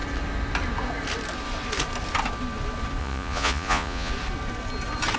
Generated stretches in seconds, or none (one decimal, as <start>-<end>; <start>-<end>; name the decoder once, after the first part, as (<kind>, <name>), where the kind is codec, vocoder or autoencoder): 3.0-4.1 (vocoder, Vocos)